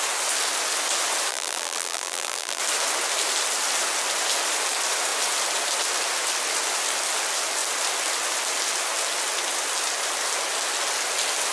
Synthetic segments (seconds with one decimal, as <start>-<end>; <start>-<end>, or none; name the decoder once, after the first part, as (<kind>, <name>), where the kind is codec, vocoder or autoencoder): 1.3-2.6 (vocoder, BigVGAN v2)